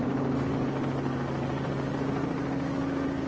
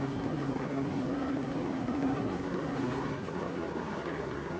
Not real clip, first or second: second